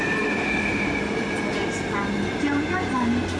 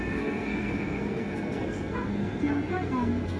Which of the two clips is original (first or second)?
first